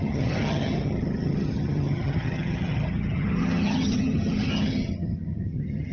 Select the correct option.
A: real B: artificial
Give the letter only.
B